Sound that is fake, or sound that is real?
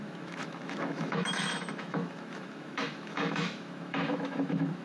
fake